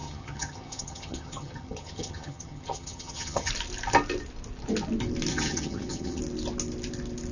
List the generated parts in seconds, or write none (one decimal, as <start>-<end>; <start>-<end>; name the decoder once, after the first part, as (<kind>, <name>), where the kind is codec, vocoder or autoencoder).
0.0-3.5 (vocoder, HiFi-GAN); 5.3-6.2